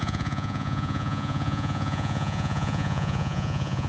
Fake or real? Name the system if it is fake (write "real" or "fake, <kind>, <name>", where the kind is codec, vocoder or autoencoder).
fake, vocoder, Vocos